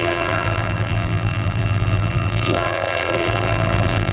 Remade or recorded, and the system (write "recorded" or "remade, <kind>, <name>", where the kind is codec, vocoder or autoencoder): remade, vocoder, BigVGAN v2